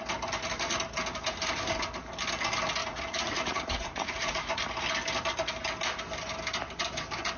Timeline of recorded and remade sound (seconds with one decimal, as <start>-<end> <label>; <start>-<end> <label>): 0.0-2.8 recorded; 2.8-4.6 remade; 4.6-7.4 recorded